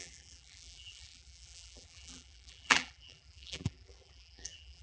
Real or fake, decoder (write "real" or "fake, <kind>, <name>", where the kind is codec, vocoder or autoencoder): fake, vocoder, BigVGAN v2